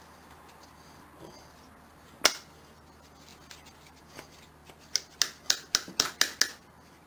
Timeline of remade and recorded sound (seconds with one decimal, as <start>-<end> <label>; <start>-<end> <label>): 0.0-7.1 recorded